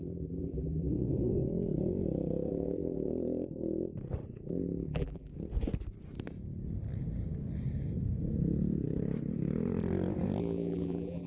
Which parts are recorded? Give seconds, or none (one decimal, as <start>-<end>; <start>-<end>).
0.9-2.5; 3.1-4.5; 5.3-10.4